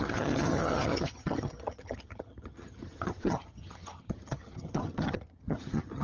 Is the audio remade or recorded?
remade